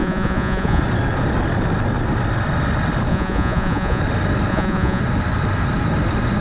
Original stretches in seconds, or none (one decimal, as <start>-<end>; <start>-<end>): 0.8-3.1; 4.0-4.5; 5.0-6.4